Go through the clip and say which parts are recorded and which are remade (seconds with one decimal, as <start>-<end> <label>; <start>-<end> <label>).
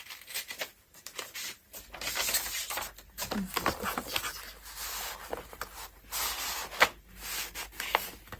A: 0.0-0.6 recorded; 0.6-2.2 remade; 2.2-8.4 recorded